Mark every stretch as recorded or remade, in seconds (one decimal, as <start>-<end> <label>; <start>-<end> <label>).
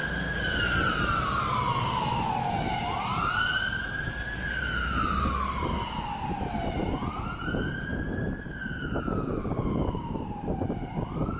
0.0-2.3 remade; 2.3-3.1 recorded; 3.1-6.9 remade; 6.9-9.3 recorded; 9.3-10.4 remade; 10.4-11.4 recorded